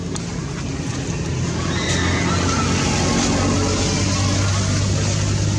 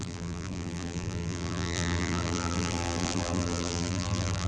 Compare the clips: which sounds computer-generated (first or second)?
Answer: second